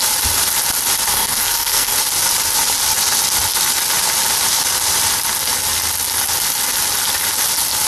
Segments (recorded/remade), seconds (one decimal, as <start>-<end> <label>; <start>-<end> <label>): 0.0-1.1 recorded; 1.1-2.0 remade; 2.0-7.9 recorded